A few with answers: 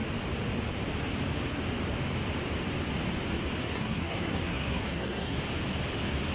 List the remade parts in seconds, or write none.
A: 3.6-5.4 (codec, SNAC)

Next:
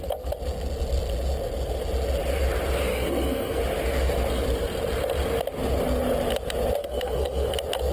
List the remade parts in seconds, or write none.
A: 2.9-3.6 (codec, SNAC); 6.8-7.5

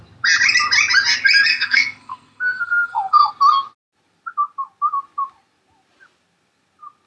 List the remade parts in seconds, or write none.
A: 1.5-3.3 (codec, SNAC)

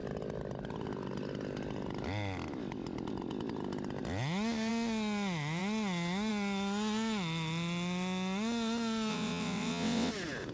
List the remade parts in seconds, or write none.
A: 9.1-10.1 (vocoder, WaveNeXt)

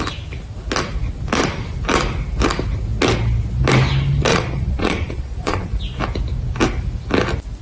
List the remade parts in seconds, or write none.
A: 4.3-5.8 (vocoder, Vocos)